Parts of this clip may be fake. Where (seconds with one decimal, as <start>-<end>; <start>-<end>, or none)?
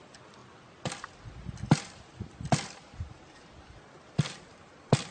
none